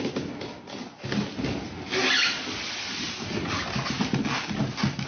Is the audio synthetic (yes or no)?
no